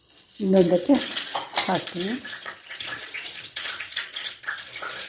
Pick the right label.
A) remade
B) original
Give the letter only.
A